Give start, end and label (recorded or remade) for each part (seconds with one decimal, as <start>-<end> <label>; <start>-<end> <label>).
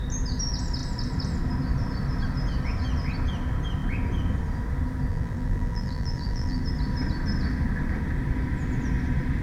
0.0-5.1 recorded; 5.1-6.6 remade; 6.6-9.4 recorded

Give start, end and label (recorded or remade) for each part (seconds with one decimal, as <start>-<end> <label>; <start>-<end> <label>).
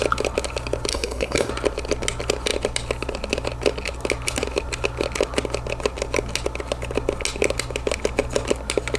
0.0-0.9 recorded; 0.9-1.5 remade; 1.5-9.0 recorded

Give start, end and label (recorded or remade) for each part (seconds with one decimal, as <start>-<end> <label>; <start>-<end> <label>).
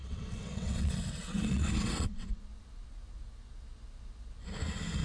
0.0-2.4 remade; 2.4-5.0 recorded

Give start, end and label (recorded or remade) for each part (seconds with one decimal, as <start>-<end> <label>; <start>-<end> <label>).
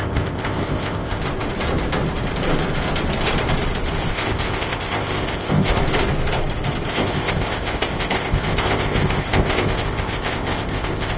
0.0-1.2 remade; 1.2-4.1 recorded; 4.1-5.8 remade; 5.8-6.9 recorded; 6.9-11.2 remade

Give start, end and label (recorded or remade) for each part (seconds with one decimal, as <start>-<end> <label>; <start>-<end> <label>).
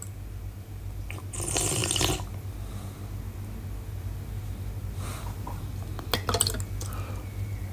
0.0-7.7 recorded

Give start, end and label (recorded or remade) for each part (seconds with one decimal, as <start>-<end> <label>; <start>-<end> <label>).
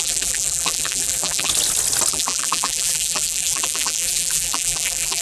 0.0-1.5 remade; 1.5-2.1 recorded; 2.1-5.2 remade